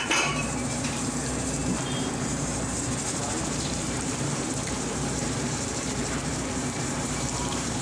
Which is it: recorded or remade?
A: remade